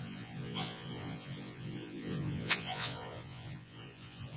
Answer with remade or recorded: remade